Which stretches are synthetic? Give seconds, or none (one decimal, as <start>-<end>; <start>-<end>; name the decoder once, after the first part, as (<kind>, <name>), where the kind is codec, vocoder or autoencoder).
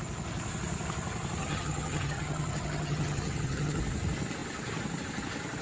1.4-3.8 (vocoder, HiFi-GAN)